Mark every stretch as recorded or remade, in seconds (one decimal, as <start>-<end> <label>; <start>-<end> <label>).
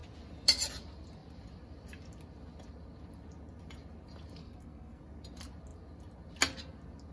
0.0-4.4 recorded; 4.4-5.0 remade; 5.0-7.1 recorded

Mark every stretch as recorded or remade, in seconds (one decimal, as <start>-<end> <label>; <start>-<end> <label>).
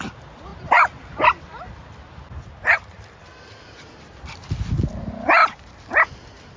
0.0-6.6 recorded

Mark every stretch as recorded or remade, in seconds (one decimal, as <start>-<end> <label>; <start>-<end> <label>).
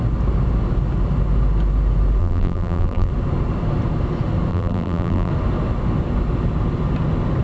0.0-2.2 recorded; 2.2-3.1 remade; 3.1-4.5 recorded; 4.5-5.3 remade; 5.3-7.4 recorded